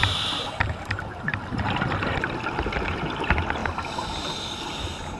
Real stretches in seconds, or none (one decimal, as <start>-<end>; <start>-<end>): 3.1-3.6; 4.6-5.2